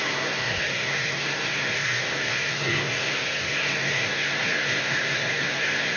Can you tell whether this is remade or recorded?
remade